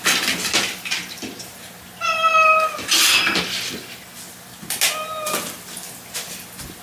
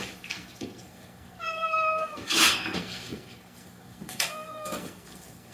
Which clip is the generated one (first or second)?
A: second